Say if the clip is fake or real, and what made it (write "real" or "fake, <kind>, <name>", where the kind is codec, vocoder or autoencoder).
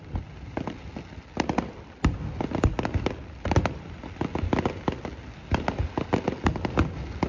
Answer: real